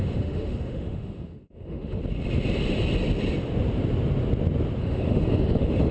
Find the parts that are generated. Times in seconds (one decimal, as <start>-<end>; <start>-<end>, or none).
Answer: 0.0-2.0; 4.8-5.9